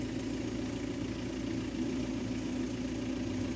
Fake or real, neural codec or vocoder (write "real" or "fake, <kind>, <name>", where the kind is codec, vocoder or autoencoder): real